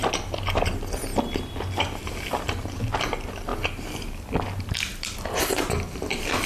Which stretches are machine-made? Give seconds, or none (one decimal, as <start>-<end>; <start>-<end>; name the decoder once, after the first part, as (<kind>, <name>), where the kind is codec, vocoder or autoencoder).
none